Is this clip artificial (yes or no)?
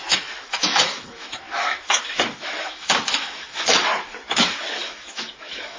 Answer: yes